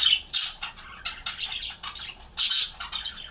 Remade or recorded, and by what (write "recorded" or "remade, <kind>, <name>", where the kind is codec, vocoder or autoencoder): recorded